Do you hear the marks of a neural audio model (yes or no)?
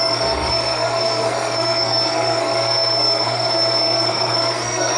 yes